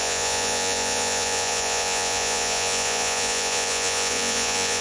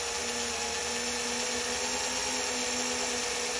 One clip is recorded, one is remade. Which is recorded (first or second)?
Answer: second